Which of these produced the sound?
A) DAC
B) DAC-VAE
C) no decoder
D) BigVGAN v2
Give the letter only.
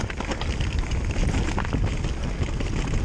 C